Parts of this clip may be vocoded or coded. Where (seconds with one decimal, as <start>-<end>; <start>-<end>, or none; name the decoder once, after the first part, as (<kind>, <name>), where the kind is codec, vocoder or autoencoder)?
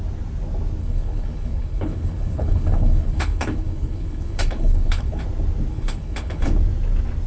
0.8-5.2 (codec, HILCodec); 5.7-6.5